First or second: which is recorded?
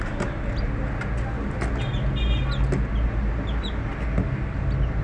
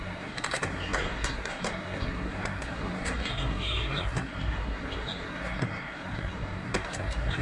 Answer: first